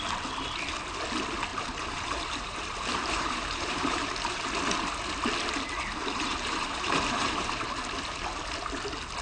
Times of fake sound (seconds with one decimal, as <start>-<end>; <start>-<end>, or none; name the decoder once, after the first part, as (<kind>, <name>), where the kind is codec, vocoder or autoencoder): 1.5-4.0 (vocoder, BigVGAN v2); 6.0-7.8